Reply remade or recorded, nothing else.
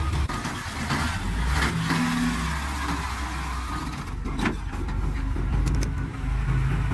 recorded